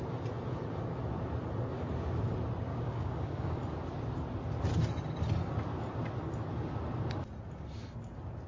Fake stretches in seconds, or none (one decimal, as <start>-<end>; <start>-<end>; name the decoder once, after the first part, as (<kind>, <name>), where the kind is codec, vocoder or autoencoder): 2.7-3.6 (codec, DAC)